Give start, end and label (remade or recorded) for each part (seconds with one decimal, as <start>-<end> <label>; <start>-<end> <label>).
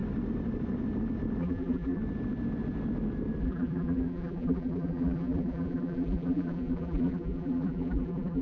0.0-1.4 recorded; 1.4-2.0 remade; 2.0-3.4 recorded; 3.4-8.4 remade